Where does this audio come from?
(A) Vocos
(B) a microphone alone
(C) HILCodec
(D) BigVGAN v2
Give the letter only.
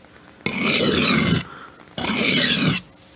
B